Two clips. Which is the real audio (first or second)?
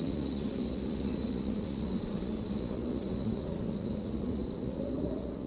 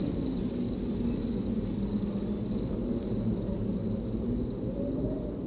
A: second